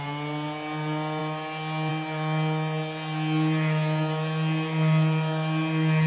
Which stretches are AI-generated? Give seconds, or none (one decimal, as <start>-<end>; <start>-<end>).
none